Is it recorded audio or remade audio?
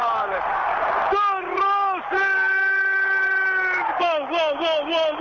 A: recorded